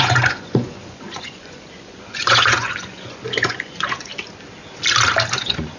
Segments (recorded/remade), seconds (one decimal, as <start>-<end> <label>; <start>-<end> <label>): 0.0-4.1 remade; 4.1-5.3 recorded; 5.3-5.8 remade